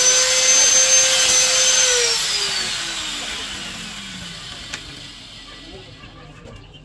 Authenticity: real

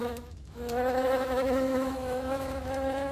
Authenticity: fake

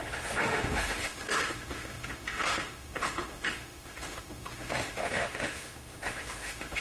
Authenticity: fake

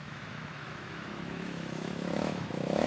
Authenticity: fake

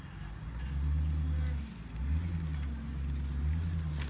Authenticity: real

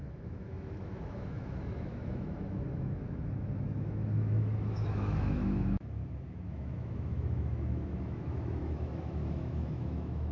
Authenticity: fake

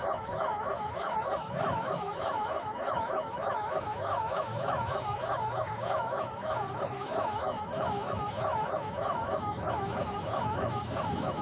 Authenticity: fake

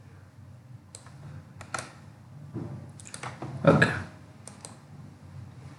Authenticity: real